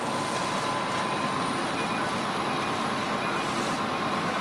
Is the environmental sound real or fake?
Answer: real